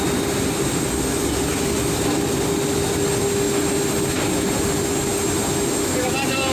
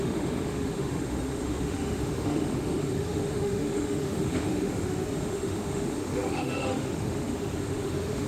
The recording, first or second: first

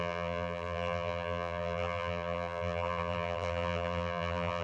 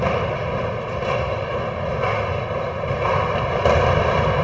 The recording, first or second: second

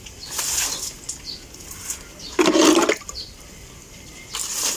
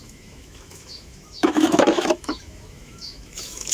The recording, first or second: first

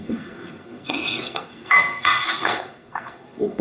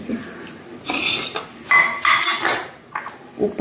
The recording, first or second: second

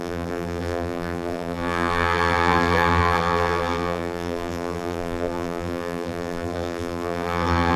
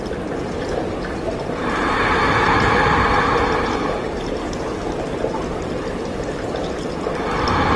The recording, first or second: second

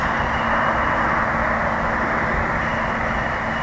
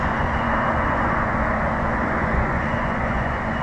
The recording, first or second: first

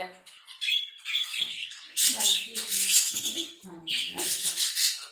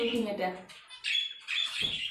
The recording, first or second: second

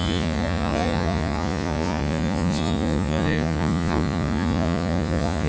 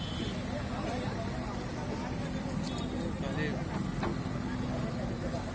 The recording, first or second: second